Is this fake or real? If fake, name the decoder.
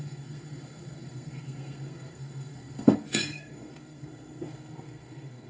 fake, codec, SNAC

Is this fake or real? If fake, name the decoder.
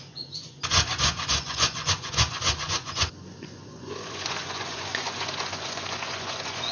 fake, vocoder, Vocos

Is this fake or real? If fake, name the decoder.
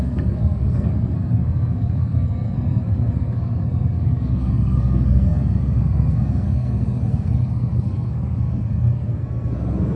fake, codec, SNAC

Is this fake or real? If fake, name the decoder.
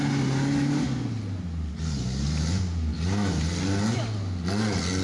real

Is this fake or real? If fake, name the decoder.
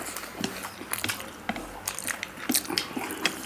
real